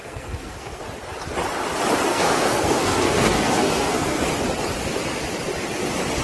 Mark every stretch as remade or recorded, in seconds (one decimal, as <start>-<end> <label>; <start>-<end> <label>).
0.0-0.8 remade; 0.8-2.1 recorded; 2.1-4.3 remade; 4.3-6.2 recorded